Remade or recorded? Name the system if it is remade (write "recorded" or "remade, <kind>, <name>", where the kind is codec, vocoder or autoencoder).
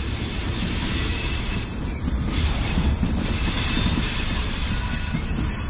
remade, vocoder, BigVGAN v2